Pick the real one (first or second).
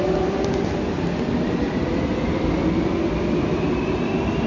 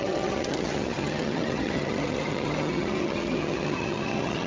first